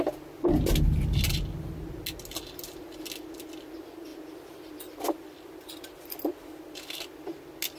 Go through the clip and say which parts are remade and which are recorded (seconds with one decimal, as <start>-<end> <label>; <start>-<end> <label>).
0.0-7.8 recorded

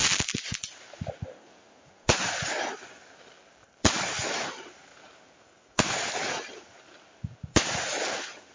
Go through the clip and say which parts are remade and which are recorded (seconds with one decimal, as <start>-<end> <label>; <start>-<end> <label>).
0.0-3.2 recorded; 3.2-4.9 remade; 4.9-5.8 recorded; 5.8-8.5 remade